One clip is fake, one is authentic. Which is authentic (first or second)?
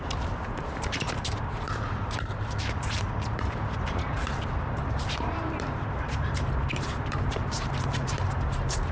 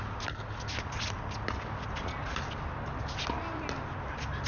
second